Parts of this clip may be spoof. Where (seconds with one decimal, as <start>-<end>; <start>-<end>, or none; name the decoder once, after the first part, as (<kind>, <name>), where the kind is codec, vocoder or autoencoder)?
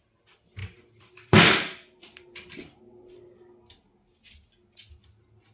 0.6-2.8 (vocoder, BigVGAN v2)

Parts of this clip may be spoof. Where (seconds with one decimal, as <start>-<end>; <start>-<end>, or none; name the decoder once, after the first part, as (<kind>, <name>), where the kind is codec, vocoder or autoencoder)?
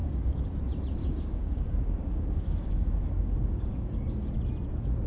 0.0-0.6 (codec, DAC); 1.0-4.1